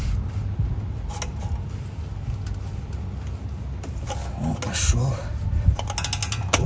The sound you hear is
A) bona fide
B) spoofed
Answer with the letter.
A